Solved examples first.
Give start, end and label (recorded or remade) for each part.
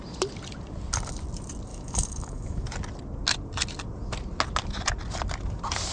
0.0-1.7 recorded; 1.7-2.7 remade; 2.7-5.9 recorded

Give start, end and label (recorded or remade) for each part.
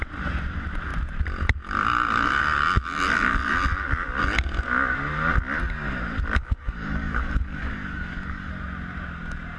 0.0-6.4 recorded; 6.4-8.5 remade; 8.5-9.6 recorded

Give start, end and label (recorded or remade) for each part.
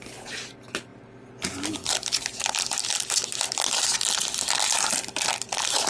0.0-5.9 recorded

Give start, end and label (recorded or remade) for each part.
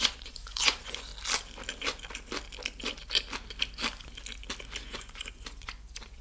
0.0-1.1 remade; 1.1-4.8 recorded; 4.8-6.2 remade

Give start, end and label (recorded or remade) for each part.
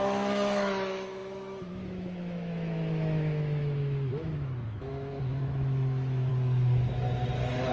0.0-6.3 remade; 6.3-7.7 recorded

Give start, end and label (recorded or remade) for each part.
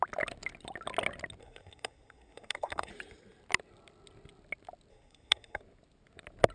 0.0-1.4 recorded; 1.4-2.9 remade; 2.9-4.9 recorded; 4.9-5.6 remade; 5.6-6.5 recorded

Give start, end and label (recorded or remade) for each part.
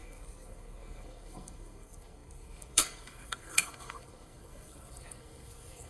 0.0-5.9 remade